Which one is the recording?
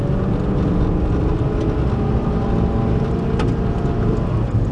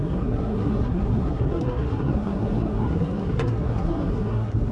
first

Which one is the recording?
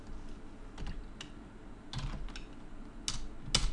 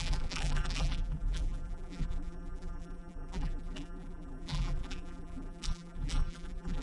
first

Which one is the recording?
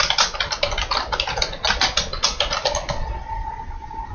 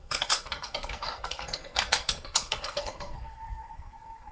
first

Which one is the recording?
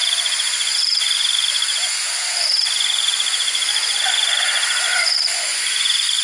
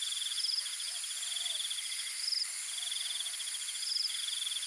second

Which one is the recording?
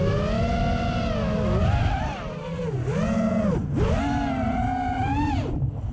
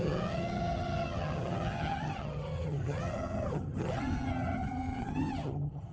first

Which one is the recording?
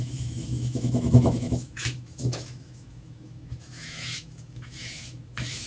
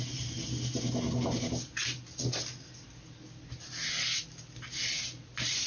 second